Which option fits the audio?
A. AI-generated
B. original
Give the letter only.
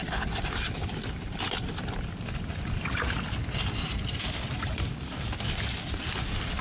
B